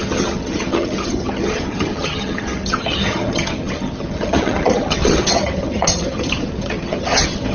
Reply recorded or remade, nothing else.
remade